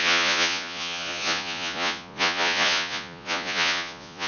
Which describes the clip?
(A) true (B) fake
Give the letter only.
B